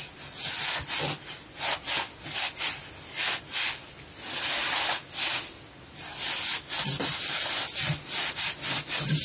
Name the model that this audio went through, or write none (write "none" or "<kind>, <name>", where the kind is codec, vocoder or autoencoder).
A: none